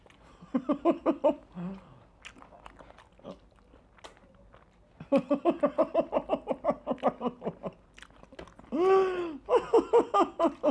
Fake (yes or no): no